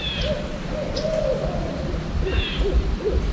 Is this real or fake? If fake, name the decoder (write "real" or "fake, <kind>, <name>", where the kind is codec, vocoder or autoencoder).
real